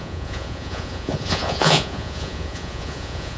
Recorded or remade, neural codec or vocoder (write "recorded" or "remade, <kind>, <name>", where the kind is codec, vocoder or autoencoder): remade, vocoder, Vocos